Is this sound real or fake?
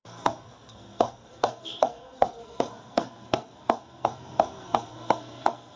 fake